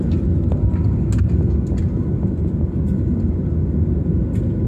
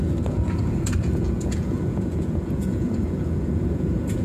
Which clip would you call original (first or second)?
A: first